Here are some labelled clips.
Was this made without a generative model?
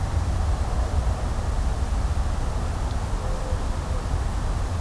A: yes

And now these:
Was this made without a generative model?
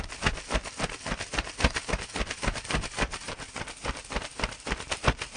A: yes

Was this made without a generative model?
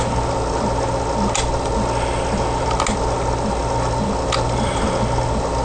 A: yes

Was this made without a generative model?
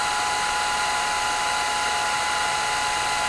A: yes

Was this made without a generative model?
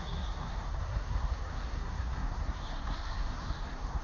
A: no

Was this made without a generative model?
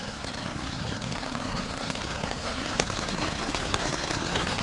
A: no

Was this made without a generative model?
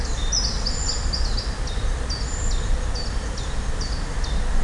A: yes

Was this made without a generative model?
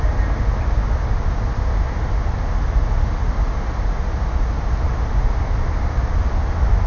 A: yes